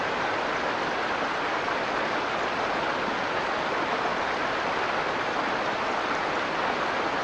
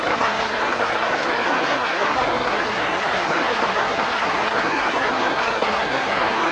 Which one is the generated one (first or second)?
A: second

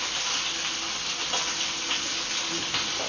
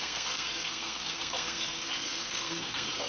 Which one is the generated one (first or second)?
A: second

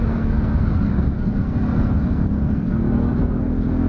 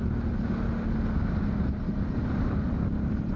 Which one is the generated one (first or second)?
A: first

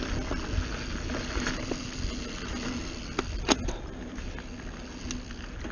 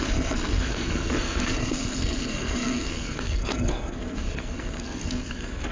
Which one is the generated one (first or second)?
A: second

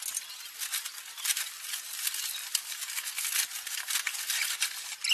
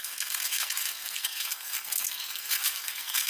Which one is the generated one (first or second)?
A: second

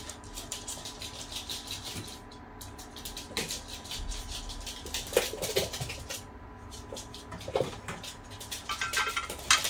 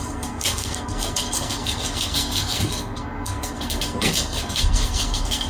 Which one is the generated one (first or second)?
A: second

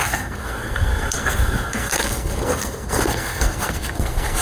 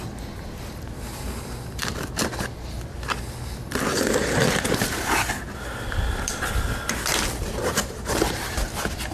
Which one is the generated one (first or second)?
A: first